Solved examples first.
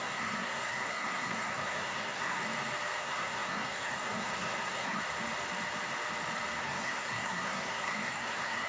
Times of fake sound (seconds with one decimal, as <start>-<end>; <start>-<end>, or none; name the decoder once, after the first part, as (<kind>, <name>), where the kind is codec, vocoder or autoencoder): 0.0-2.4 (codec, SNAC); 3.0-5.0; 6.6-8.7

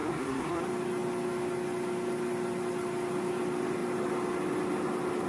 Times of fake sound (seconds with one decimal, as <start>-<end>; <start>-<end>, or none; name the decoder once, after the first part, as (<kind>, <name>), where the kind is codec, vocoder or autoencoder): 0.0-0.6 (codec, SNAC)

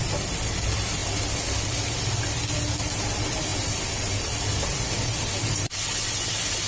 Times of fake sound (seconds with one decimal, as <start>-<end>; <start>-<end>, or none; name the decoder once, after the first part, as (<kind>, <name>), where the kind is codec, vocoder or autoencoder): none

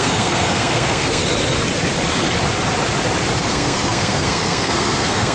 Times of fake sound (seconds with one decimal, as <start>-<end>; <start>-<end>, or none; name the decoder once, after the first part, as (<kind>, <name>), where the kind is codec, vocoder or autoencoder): 0.0-1.2 (codec, SNAC); 3.4-5.3